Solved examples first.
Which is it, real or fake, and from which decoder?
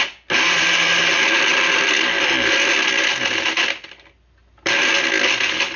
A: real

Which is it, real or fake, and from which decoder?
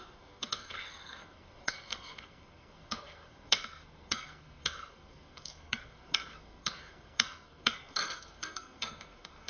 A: fake, codec, SNAC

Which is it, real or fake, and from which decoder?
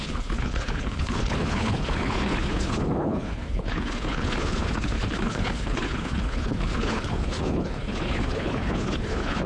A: fake, codec, HILCodec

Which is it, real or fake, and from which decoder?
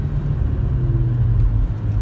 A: real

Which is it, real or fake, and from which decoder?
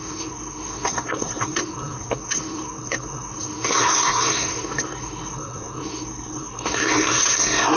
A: fake, codec, SNAC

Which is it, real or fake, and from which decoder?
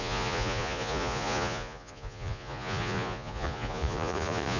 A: fake, vocoder, Vocos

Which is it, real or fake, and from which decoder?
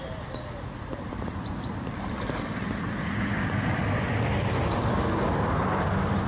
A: real